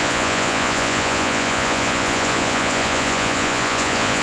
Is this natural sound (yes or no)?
no